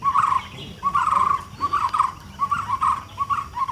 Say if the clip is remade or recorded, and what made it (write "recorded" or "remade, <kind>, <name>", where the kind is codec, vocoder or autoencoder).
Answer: recorded